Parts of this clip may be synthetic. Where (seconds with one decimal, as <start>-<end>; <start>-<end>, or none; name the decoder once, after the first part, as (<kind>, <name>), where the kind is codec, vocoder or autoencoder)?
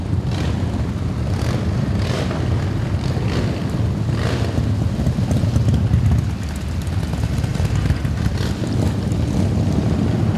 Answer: none